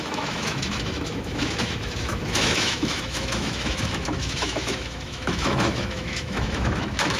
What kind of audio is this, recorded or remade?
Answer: remade